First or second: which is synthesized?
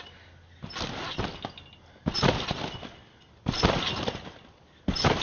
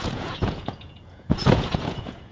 second